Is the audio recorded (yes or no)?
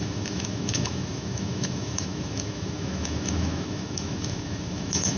no